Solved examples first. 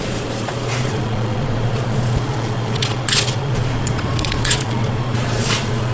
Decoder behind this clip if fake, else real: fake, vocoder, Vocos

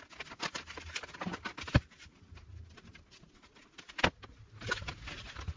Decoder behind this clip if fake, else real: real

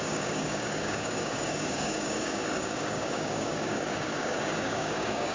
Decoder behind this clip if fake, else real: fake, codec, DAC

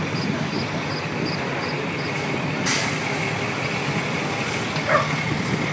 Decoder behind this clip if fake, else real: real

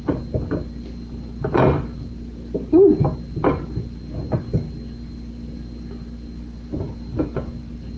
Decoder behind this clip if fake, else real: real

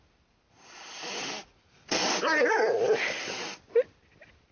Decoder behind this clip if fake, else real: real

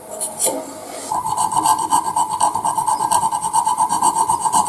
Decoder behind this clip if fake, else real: fake, vocoder, BigVGAN v2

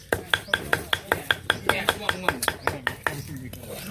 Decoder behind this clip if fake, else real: real